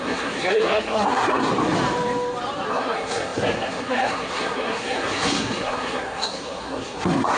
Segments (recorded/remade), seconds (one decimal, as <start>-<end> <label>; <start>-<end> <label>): 0.0-1.5 remade; 1.5-2.7 recorded; 2.7-7.4 remade